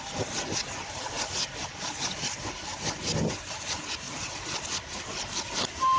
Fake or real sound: real